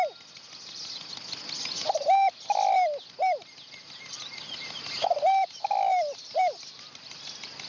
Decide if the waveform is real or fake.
real